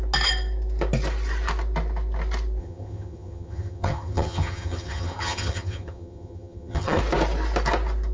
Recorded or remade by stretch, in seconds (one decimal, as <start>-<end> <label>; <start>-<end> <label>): 0.0-2.6 recorded; 2.6-7.0 remade; 7.0-8.1 recorded